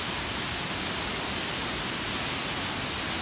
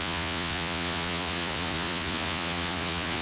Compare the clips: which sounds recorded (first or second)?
first